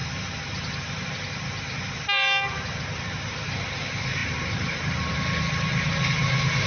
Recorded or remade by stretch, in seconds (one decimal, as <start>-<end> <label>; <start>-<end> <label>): 0.0-6.7 recorded